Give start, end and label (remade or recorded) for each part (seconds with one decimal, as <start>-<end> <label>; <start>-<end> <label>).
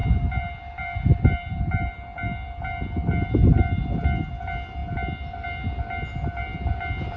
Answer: 0.0-7.2 recorded